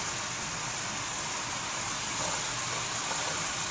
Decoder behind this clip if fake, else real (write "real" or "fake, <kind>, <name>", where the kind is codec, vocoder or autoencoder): real